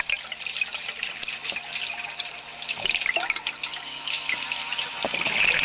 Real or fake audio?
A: real